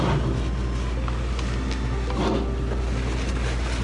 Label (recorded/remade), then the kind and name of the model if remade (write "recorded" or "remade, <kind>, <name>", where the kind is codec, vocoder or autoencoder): recorded